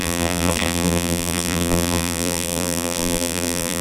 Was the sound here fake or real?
fake